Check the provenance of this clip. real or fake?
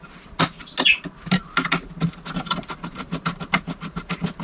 real